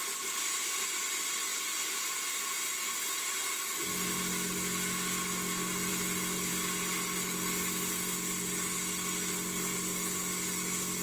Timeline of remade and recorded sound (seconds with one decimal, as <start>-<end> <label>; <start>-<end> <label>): 0.0-11.0 recorded